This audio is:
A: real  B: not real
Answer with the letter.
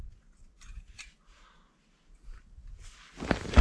A